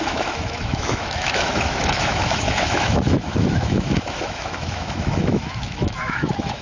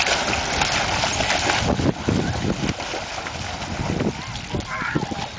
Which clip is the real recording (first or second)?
second